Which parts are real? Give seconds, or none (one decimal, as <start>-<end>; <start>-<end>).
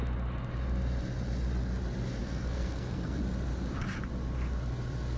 0.0-2.2; 3.2-5.2